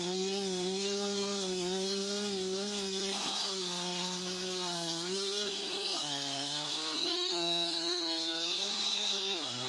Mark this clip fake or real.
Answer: fake